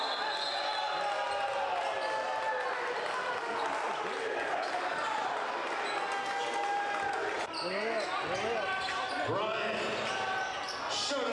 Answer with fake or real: real